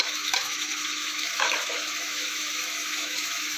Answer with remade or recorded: remade